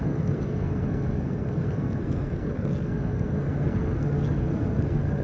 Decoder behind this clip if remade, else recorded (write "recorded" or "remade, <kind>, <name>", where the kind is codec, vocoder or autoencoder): remade, codec, SNAC